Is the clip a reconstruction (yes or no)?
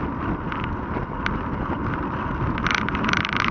no